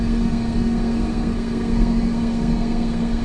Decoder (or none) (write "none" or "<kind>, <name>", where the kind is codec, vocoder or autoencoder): codec, SNAC